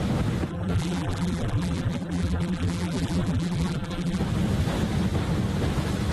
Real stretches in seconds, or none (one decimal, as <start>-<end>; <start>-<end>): 0.0-0.5; 4.2-6.1

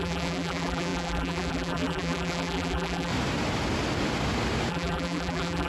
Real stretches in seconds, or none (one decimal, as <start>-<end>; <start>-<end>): 3.1-4.7